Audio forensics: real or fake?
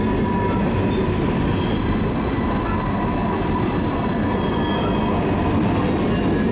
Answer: real